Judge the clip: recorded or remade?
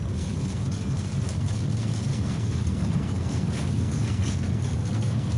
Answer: remade